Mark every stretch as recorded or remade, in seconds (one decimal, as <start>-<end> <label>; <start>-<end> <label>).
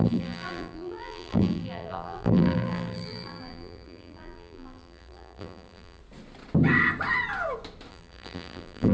0.0-6.0 remade; 6.0-7.9 recorded; 7.9-8.9 remade